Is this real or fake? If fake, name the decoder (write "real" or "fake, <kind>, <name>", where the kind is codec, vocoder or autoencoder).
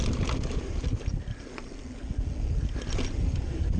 real